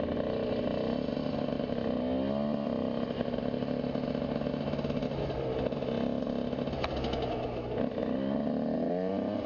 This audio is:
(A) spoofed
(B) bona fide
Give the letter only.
B